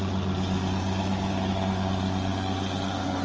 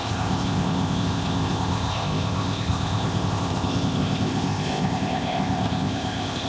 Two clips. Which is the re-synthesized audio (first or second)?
second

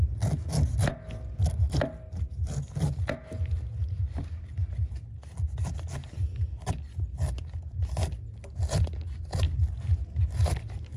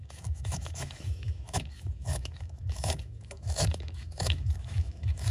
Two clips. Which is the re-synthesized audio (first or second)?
second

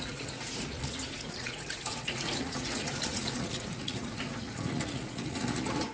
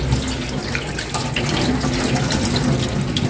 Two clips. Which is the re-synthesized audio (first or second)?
first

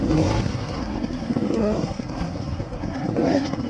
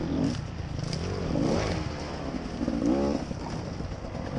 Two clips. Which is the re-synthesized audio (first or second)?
first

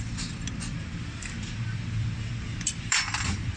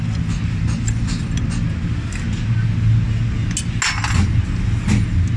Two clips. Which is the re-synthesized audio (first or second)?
first